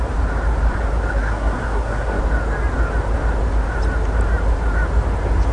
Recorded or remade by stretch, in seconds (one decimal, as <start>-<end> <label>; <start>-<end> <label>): 0.0-1.1 recorded; 1.1-2.2 remade; 2.2-5.5 recorded